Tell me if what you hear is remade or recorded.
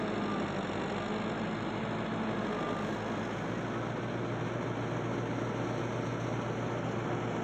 recorded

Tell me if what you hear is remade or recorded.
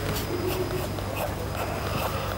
recorded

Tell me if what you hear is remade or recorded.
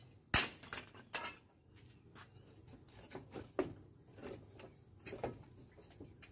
recorded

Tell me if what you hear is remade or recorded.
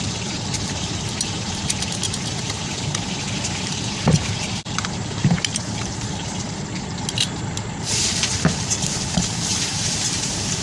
remade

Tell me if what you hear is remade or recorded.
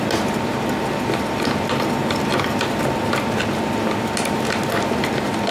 recorded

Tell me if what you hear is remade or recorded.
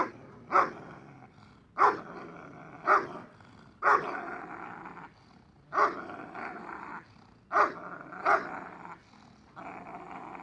recorded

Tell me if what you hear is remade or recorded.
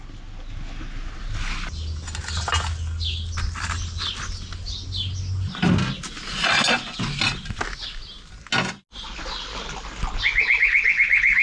recorded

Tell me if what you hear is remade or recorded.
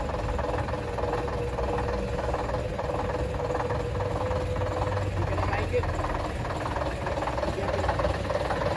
recorded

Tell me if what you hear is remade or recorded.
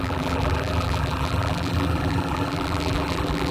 remade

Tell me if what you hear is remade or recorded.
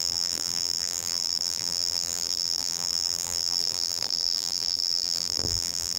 remade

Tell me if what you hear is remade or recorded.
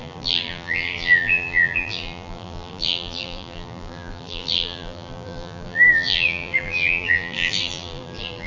remade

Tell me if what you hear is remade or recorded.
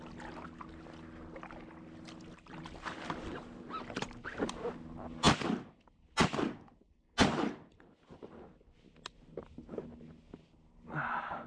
recorded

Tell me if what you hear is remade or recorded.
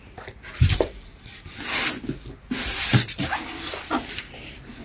recorded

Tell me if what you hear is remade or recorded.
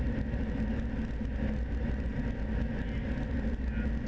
recorded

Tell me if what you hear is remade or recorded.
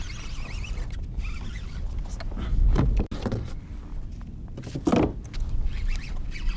recorded